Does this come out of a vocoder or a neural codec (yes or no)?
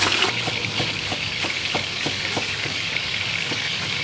yes